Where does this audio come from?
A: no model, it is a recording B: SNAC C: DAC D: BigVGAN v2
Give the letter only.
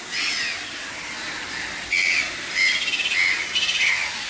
A